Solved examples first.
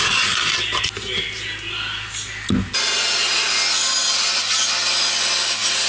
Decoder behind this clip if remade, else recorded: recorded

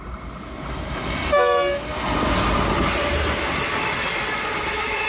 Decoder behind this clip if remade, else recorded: recorded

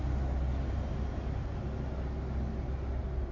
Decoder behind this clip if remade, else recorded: recorded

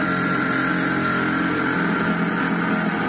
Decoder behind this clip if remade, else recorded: recorded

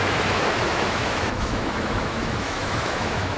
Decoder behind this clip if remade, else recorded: remade, autoencoder, DAC-VAE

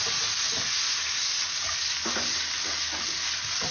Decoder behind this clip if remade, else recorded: recorded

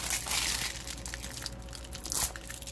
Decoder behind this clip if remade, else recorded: recorded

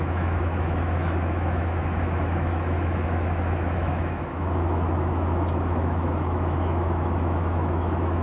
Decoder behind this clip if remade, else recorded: remade, autoencoder, DAC-VAE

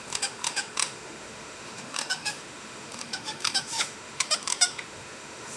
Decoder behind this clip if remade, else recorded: remade, autoencoder, DAC-VAE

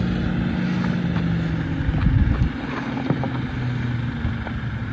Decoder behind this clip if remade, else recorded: recorded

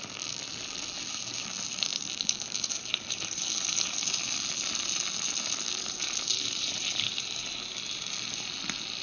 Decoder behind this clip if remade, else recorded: recorded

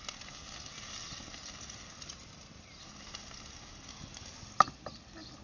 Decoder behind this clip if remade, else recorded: recorded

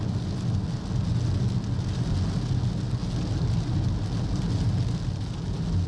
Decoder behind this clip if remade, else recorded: recorded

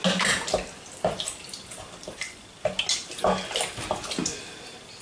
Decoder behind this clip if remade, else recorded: recorded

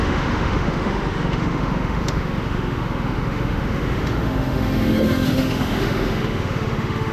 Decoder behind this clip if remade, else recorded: remade, autoencoder, DAC-VAE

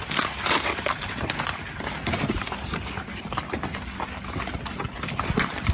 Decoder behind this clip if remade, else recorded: recorded